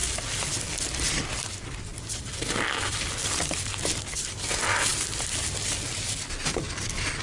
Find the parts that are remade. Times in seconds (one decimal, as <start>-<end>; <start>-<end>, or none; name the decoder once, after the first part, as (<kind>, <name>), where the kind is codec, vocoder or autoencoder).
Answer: none

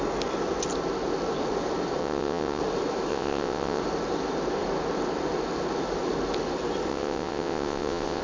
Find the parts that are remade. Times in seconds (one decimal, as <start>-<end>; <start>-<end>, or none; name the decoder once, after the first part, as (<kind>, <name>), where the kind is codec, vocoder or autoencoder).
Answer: 2.0-2.6 (vocoder, WaveNeXt); 3.1-3.8; 6.9-8.2

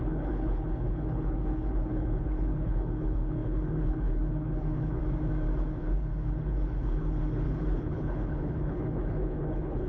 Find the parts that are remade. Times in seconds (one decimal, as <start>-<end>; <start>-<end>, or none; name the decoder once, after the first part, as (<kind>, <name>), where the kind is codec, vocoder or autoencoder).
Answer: 0.0-5.0 (codec, HILCodec); 5.8-9.9

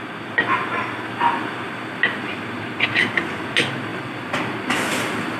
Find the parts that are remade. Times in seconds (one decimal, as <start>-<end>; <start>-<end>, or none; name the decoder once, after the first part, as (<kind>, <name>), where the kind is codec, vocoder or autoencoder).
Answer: none

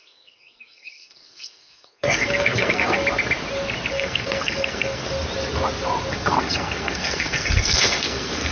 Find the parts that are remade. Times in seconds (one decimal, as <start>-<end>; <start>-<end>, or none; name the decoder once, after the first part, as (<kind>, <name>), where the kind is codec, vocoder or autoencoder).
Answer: 0.0-3.0 (codec, SNAC); 3.9-5.0; 6.1-8.5